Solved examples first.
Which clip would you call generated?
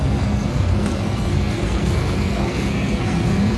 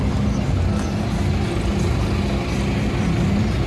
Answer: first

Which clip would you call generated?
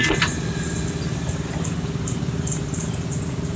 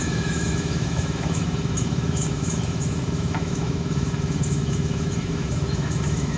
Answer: second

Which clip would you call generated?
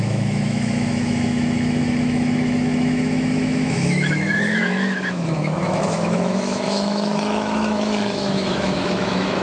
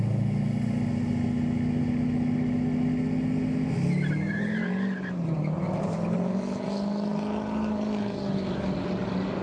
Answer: first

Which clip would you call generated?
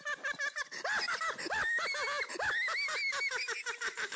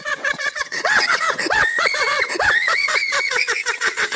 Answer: second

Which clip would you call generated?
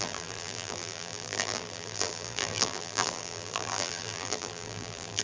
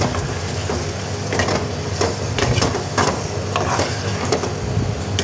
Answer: first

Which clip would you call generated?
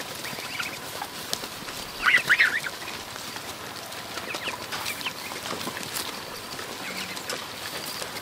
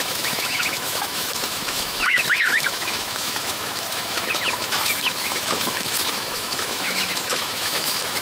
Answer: second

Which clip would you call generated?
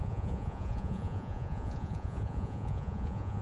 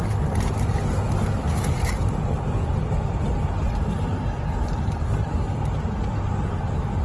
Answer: first